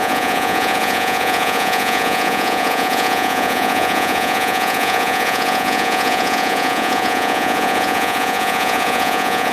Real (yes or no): no